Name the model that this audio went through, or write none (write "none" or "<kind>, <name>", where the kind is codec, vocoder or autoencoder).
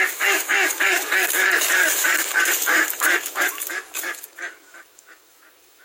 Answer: codec, DAC